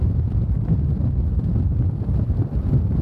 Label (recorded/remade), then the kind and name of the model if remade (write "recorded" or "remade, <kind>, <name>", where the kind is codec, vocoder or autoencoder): recorded